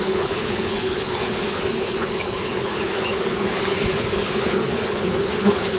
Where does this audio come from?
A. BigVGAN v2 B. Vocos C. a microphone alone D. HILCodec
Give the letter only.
D